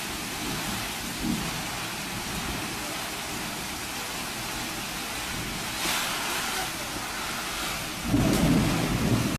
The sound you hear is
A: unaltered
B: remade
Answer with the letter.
A